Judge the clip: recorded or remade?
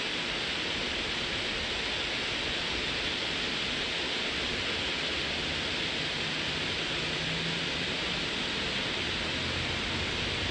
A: recorded